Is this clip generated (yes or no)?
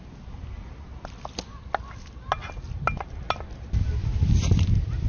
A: no